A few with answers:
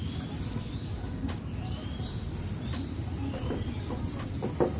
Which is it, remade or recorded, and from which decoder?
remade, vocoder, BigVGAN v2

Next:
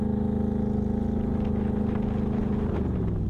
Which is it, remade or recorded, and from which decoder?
recorded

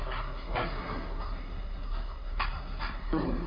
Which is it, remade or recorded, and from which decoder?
remade, codec, SNAC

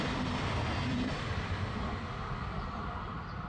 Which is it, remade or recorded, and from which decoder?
recorded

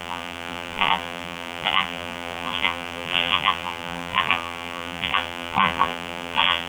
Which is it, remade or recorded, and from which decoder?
remade, vocoder, BigVGAN v2